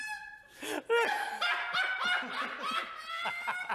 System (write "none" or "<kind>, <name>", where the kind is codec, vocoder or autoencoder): none